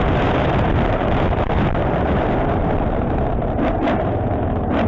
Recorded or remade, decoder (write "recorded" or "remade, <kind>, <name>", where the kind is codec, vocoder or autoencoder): remade, vocoder, BigVGAN v2